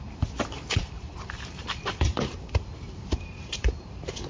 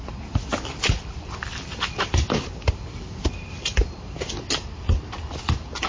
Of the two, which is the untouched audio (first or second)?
second